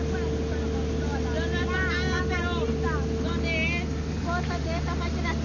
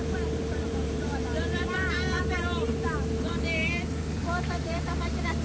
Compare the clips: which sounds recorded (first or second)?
first